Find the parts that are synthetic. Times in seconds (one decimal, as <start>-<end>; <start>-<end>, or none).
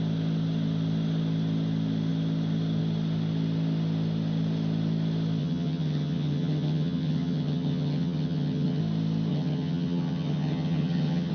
5.4-8.8; 9.3-11.3